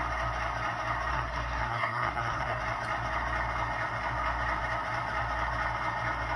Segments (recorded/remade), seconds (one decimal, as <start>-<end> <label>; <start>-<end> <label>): 0.0-1.1 recorded; 1.1-2.6 remade; 2.6-6.4 recorded